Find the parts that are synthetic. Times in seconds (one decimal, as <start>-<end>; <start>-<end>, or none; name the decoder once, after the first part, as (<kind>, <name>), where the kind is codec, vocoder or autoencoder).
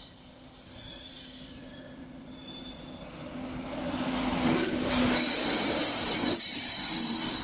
0.0-2.4 (vocoder, BigVGAN v2); 5.4-7.4